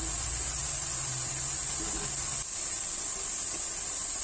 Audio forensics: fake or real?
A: real